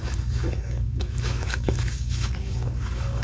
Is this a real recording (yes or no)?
no